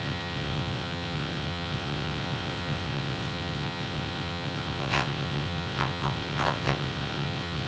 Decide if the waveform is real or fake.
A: fake